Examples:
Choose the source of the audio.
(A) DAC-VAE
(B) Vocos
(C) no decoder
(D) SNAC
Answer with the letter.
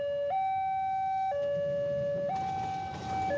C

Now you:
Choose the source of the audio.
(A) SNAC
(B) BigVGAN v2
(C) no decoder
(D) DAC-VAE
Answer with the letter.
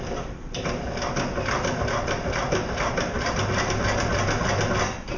C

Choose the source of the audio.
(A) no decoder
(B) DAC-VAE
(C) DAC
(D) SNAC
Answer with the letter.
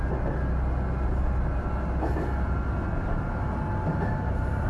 A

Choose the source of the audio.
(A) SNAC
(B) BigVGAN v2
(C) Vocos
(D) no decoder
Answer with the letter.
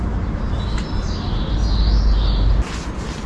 D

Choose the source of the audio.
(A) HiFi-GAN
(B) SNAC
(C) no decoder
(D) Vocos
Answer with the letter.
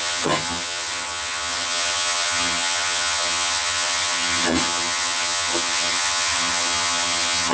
A